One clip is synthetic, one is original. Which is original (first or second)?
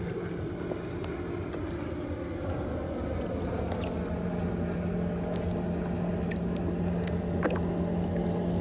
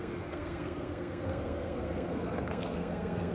first